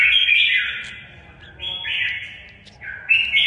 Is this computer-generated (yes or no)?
no